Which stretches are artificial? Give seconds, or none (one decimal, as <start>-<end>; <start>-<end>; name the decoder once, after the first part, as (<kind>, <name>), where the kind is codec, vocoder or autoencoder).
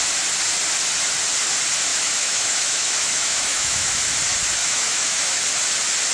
1.9-4.0 (autoencoder, DAC-VAE); 4.6-5.4